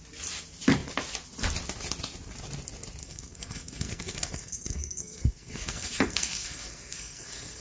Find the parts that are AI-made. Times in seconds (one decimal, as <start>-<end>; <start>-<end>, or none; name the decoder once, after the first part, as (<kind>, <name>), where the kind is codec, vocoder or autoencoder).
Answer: 3.0-7.6 (codec, SNAC)